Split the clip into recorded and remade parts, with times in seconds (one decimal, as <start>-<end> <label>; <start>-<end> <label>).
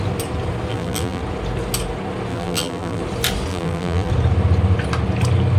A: 0.0-0.7 recorded; 0.7-1.2 remade; 1.2-2.3 recorded; 2.3-3.0 remade; 3.0-3.5 recorded; 3.5-4.1 remade; 4.1-5.6 recorded